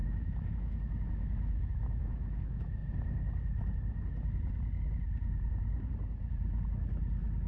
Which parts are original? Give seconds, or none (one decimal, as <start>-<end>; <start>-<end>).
2.8-7.5